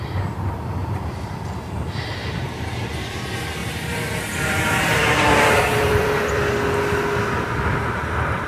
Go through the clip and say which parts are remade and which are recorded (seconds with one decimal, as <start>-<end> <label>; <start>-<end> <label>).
0.0-0.8 recorded; 0.8-2.9 remade; 2.9-3.6 recorded; 3.6-6.3 remade; 6.3-8.5 recorded